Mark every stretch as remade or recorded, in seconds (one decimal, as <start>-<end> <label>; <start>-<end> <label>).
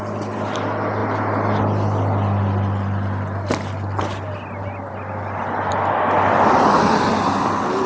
0.0-7.9 recorded